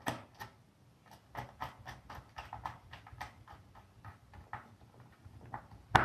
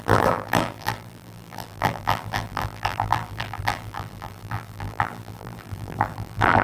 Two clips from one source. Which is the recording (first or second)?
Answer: first